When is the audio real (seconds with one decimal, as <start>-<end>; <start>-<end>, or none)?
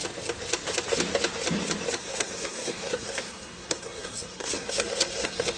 0.0-2.0